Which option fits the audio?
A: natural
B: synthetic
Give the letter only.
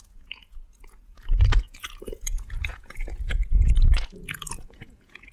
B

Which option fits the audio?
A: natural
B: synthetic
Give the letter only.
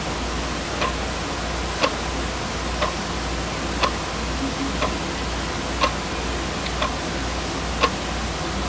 A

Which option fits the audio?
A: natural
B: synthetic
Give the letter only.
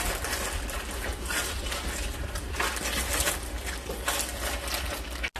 A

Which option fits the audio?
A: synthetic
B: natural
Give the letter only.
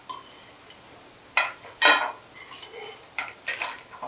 B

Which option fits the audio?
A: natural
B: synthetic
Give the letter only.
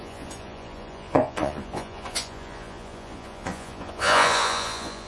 B